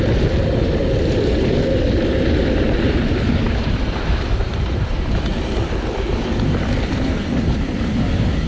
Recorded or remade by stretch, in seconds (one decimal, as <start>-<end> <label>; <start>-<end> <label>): 0.0-5.3 remade; 5.3-7.7 recorded; 7.7-8.5 remade